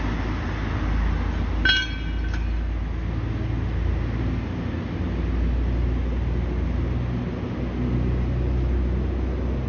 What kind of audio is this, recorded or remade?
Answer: recorded